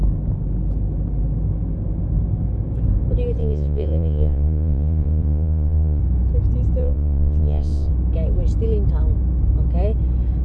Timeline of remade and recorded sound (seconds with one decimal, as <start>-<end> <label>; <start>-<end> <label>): 0.0-3.4 recorded; 3.4-6.0 remade; 6.0-6.8 recorded; 6.8-7.9 remade; 7.9-10.4 recorded